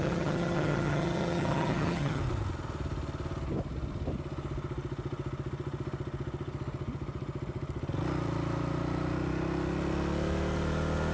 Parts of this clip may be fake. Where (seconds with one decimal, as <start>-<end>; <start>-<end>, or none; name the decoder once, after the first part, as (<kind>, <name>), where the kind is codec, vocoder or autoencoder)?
0.0-2.2 (vocoder, HiFi-GAN)